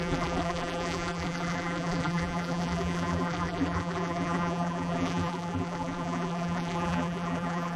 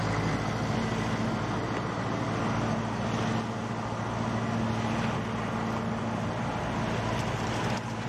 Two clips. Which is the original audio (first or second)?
second